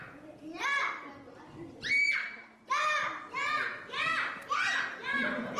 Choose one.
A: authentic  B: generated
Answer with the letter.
A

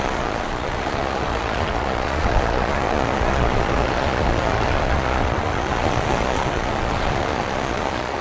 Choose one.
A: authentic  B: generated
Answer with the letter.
B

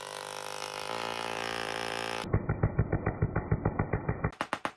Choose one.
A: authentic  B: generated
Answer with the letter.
A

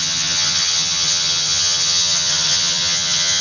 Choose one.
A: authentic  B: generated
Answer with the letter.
B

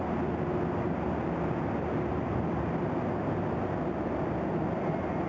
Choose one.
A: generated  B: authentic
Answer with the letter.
B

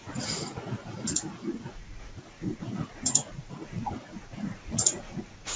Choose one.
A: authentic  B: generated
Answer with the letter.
B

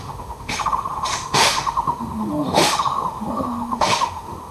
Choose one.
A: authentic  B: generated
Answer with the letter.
B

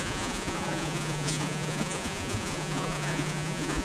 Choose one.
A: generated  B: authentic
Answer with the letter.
A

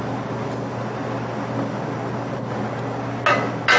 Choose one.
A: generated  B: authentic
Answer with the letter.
B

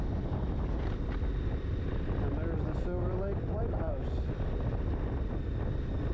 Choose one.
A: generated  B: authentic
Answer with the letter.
B